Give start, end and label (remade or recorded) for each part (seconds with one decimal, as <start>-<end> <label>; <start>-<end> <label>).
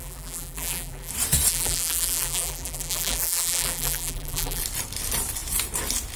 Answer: 0.0-1.1 remade; 1.1-1.5 recorded; 1.5-4.6 remade; 4.6-6.2 recorded